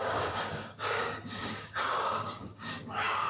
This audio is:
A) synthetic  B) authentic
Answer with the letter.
A